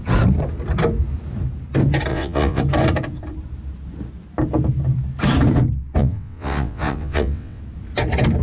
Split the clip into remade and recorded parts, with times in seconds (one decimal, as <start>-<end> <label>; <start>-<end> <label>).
0.0-2.1 recorded; 2.1-2.6 remade; 2.6-6.0 recorded; 6.0-7.6 remade; 7.6-8.4 recorded